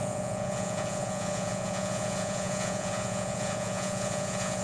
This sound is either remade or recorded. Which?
remade